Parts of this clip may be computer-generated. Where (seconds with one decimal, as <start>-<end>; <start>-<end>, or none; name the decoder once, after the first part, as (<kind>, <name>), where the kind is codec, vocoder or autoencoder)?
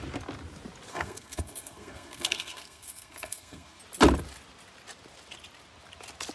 0.9-3.8 (codec, SNAC)